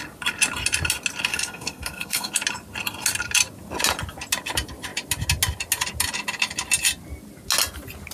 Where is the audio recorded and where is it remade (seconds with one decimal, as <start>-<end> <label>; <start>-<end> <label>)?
0.0-1.3 recorded; 1.3-2.3 remade; 2.3-8.1 recorded